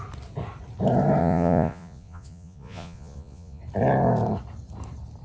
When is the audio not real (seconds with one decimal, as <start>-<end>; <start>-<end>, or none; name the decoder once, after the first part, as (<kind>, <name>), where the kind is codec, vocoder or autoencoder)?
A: 1.2-3.6 (vocoder, Vocos)